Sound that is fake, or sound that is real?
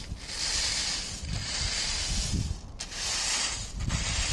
real